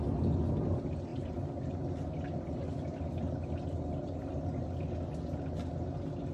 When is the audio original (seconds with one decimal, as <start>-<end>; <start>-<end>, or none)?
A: 0.0-6.3